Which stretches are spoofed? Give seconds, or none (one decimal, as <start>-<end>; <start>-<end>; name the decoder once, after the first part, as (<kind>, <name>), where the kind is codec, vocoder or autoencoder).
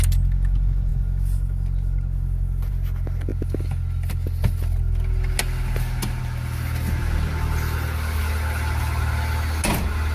none